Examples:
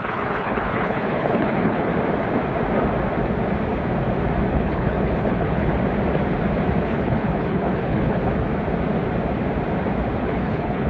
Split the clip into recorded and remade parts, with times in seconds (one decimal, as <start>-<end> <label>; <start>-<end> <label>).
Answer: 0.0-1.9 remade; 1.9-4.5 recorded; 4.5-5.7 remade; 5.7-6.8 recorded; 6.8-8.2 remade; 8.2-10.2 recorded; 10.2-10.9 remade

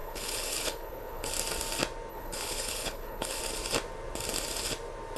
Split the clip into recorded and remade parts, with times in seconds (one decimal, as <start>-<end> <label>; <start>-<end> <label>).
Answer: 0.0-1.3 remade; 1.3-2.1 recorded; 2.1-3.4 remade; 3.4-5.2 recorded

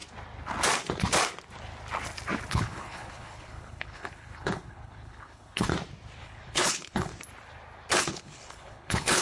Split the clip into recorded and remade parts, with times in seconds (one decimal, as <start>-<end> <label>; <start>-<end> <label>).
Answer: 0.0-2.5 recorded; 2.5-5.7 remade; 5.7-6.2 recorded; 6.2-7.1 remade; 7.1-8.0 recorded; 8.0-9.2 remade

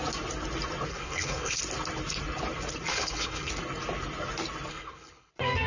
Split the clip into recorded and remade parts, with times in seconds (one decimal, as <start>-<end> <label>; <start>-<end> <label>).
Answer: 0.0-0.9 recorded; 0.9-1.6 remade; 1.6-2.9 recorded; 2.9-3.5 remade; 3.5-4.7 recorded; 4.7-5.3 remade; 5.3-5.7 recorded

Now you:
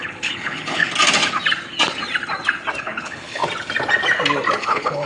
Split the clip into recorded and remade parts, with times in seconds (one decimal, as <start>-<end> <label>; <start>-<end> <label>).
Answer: 0.0-0.8 remade; 0.8-2.8 recorded; 2.8-3.4 remade; 3.4-4.6 recorded; 4.6-5.1 remade